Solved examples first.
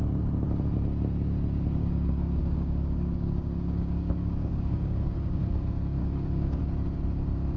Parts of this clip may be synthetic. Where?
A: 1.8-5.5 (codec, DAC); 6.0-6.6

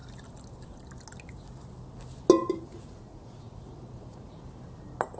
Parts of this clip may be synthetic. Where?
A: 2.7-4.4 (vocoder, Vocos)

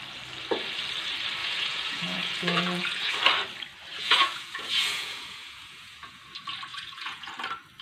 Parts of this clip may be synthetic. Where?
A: 1.4-3.2 (vocoder, Vocos); 3.9-6.2; 6.7-7.3

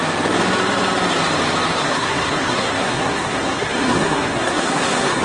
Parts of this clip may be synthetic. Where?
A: 1.8-5.2 (codec, SNAC)

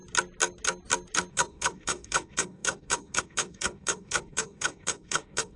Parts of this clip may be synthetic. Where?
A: 1.3-5.6 (autoencoder, DAC-VAE)

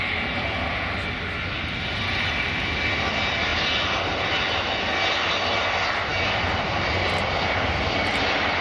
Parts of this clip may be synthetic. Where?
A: none

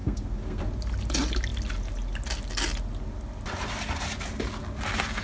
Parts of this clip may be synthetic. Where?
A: 0.0-0.6 (codec, SNAC)

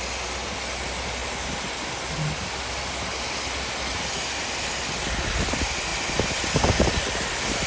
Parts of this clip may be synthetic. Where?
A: none